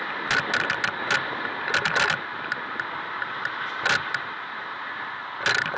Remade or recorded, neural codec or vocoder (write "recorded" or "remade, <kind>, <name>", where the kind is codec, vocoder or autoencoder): recorded